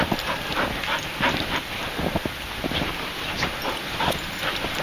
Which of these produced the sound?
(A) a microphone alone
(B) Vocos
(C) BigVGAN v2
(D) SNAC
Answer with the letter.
A